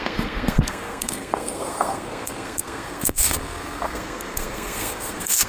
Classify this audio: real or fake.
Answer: fake